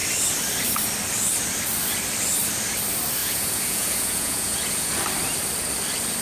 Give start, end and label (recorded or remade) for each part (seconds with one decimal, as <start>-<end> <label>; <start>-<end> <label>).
0.0-3.2 recorded; 3.2-4.9 remade; 4.9-6.2 recorded